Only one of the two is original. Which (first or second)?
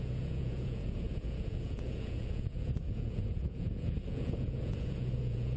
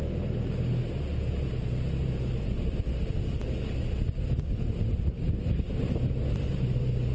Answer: second